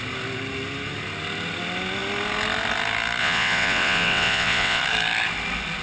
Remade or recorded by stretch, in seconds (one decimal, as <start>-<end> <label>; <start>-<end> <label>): 0.0-3.2 recorded; 3.2-4.8 remade; 4.8-5.8 recorded